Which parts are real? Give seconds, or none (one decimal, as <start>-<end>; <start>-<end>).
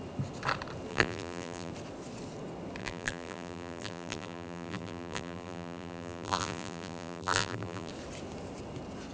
0.0-0.9; 1.7-2.8; 7.9-9.1